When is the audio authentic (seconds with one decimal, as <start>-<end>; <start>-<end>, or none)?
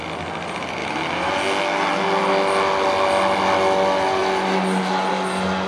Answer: 0.0-0.8; 1.3-5.7